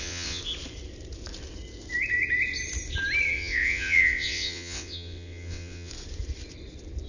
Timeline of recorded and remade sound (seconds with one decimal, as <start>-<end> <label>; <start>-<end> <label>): 0.0-0.4 remade; 0.4-3.3 recorded; 3.3-5.9 remade; 5.9-7.1 recorded